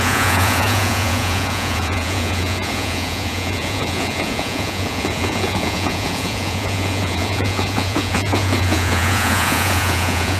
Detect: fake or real fake